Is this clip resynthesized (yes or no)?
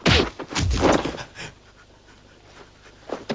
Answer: no